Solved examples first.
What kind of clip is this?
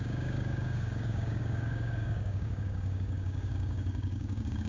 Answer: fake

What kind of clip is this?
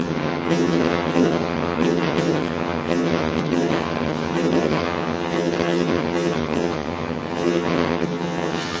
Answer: fake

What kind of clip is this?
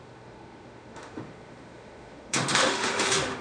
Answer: fake